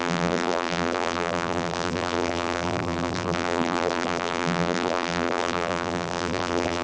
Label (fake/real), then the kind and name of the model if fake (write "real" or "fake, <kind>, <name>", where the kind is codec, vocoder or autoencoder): fake, vocoder, BigVGAN v2